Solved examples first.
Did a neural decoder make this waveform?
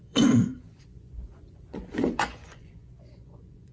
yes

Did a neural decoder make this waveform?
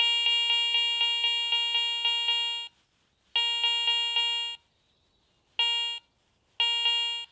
no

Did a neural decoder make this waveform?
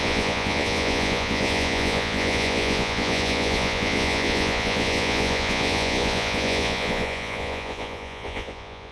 yes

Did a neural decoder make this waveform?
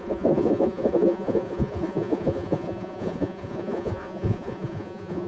yes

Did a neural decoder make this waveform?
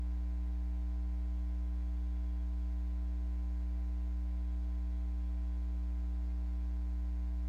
no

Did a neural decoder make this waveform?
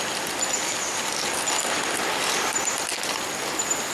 no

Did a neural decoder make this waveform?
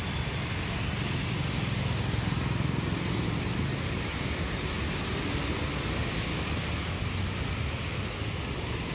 no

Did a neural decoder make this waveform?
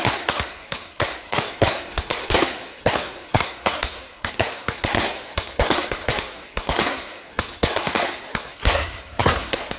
yes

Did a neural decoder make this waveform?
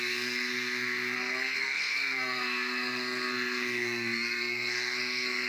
yes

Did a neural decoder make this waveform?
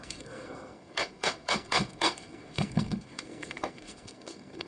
yes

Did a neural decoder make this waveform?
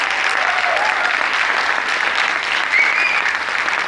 no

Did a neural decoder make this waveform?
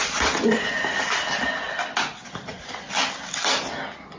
no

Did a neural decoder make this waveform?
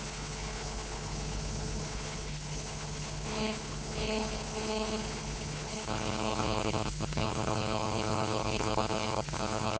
yes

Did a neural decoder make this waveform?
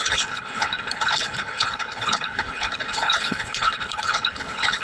yes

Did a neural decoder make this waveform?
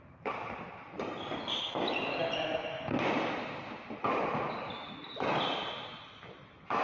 no